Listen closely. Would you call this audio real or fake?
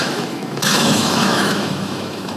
fake